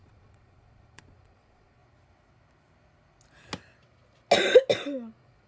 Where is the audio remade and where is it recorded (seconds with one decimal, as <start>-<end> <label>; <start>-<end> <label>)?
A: 0.0-1.8 remade; 1.8-5.1 recorded; 5.1-5.5 remade